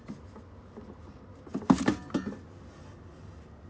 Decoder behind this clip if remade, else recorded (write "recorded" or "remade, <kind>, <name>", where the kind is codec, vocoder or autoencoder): recorded